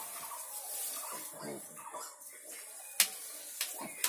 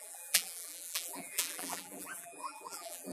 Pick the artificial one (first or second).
second